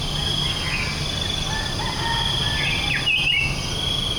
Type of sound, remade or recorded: recorded